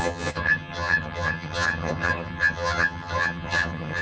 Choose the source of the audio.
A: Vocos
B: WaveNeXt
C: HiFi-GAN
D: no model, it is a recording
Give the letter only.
C